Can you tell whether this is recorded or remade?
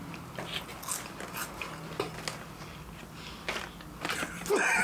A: recorded